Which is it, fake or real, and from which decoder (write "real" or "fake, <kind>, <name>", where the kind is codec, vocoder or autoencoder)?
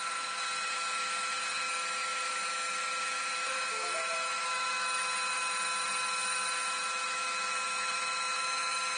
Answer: fake, autoencoder, DAC-VAE